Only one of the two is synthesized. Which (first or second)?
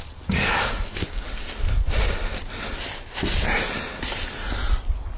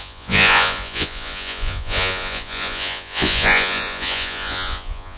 second